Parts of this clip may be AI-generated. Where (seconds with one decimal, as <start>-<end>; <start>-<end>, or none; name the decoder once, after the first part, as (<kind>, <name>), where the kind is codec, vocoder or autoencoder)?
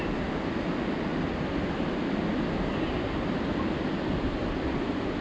none